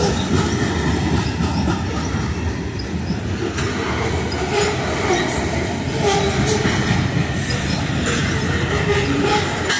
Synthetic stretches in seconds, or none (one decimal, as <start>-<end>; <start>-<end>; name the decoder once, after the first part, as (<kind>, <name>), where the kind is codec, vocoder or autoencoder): none